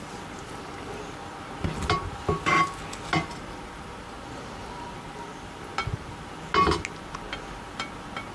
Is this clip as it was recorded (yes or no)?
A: yes